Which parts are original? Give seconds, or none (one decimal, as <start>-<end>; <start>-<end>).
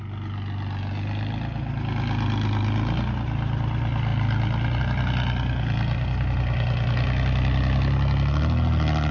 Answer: 0.0-9.1